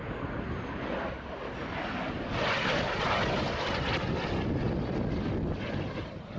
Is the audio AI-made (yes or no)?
no